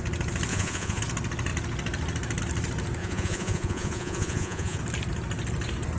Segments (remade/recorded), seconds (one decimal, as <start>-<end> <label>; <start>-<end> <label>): 0.0-0.5 recorded; 0.5-1.0 remade; 1.0-3.0 recorded; 3.0-4.8 remade; 4.8-6.0 recorded